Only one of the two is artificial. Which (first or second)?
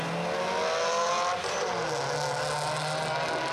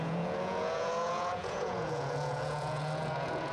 second